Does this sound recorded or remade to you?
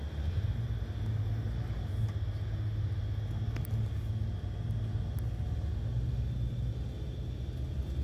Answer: recorded